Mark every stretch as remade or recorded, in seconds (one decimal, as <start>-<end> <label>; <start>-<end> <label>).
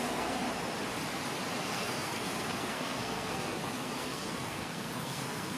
0.0-0.4 remade; 0.4-1.6 recorded; 1.6-5.6 remade